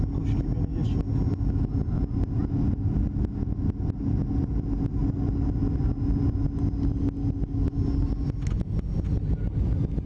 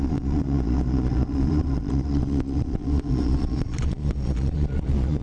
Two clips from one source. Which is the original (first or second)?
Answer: first